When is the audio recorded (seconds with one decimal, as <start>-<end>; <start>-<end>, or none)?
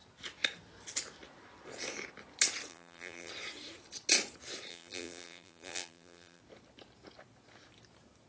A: 0.0-2.7; 3.3-4.7; 6.4-8.3